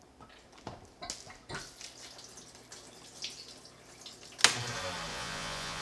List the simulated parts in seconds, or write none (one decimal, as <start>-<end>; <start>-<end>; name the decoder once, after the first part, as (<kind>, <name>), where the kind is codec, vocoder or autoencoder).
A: 5.1-5.8 (vocoder, Vocos)